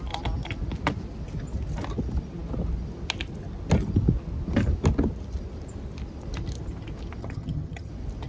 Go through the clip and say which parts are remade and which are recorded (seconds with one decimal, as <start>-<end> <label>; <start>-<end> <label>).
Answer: 0.0-7.2 recorded; 7.2-7.9 remade; 7.9-8.3 recorded